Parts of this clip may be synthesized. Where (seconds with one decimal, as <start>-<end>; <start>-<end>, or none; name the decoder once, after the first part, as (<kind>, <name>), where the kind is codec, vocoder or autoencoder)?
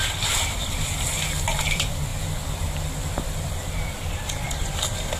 0.0-5.2 (vocoder, BigVGAN v2)